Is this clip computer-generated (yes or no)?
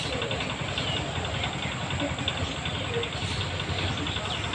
no